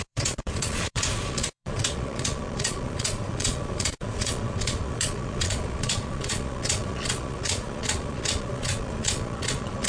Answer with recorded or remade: remade